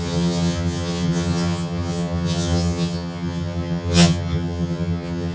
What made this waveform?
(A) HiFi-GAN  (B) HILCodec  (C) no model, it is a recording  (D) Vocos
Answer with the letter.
A